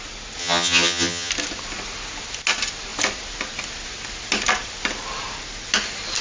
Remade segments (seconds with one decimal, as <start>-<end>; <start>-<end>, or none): 0.4-1.3